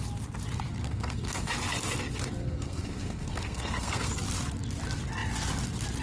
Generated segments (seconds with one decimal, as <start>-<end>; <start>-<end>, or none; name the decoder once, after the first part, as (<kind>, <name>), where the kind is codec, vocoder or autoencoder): 0.8-1.5 (codec, SNAC); 2.4-4.1